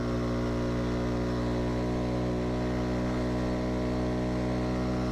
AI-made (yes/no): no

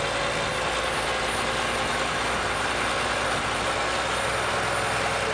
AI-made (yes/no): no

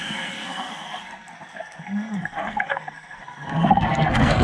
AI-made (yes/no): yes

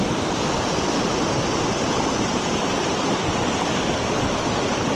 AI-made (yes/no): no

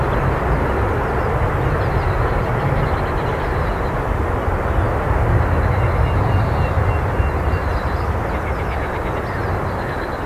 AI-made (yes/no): no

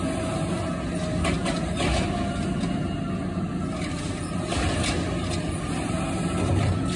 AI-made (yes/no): no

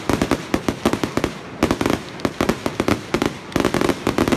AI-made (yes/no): no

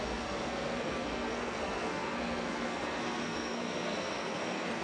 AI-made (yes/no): yes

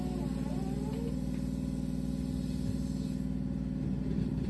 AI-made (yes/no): no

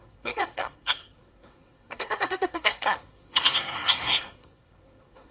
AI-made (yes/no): yes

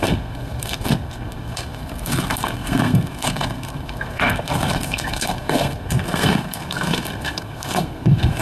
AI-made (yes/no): yes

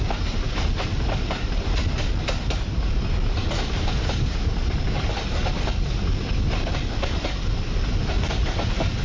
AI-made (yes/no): no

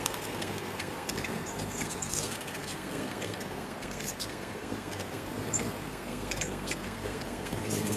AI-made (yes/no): yes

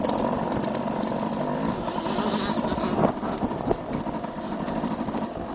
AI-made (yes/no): no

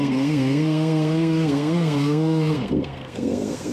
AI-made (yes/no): yes